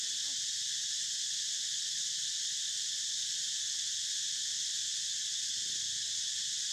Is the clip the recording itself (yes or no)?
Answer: yes